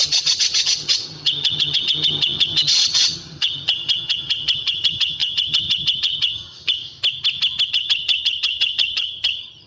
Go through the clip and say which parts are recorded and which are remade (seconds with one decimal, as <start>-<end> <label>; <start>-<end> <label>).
0.0-6.8 remade; 6.8-7.7 recorded; 7.7-9.7 remade